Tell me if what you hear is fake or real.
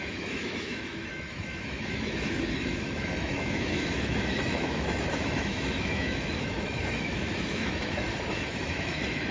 fake